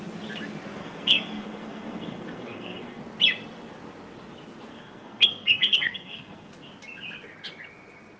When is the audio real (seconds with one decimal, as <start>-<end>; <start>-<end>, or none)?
0.0-0.8; 3.0-4.7; 6.5-8.2